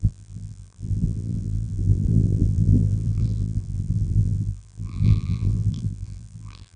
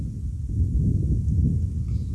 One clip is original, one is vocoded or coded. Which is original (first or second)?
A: second